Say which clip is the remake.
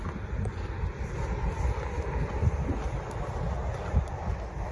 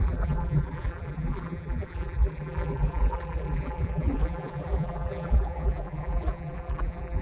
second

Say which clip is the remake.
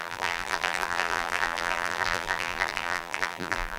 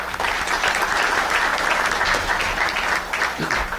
first